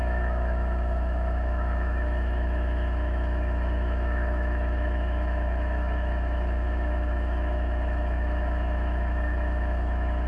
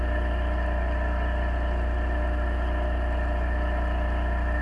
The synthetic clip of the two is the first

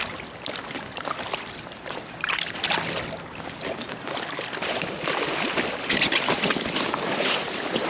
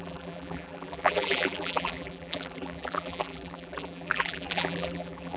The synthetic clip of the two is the second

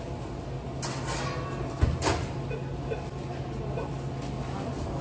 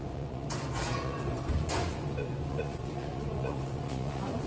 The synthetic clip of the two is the second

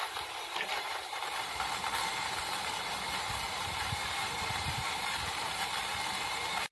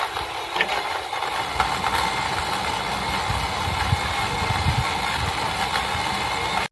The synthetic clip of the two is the first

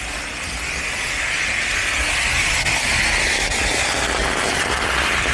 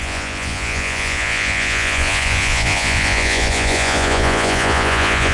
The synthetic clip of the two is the second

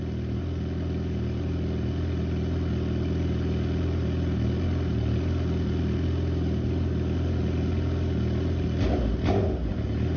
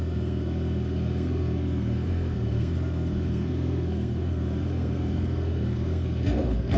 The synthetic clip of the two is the second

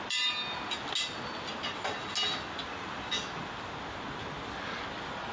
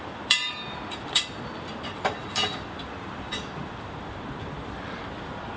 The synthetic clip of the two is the second